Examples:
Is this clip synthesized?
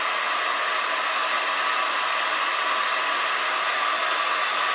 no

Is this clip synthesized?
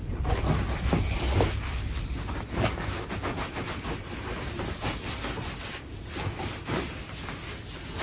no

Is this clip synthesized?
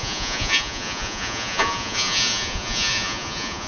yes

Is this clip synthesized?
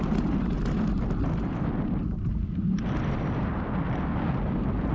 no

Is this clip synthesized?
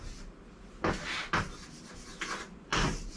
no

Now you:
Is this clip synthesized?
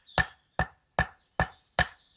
no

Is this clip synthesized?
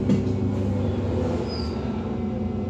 no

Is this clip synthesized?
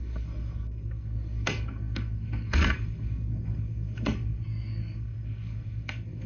yes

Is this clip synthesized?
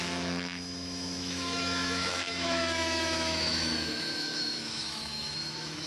yes